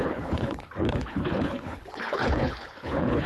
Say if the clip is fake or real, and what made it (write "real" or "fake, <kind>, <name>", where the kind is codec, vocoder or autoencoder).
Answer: fake, codec, HILCodec